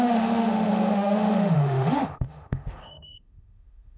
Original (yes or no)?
no